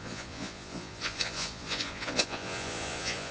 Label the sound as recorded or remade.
remade